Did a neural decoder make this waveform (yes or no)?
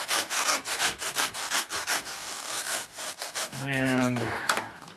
yes